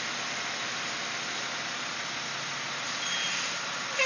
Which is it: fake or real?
real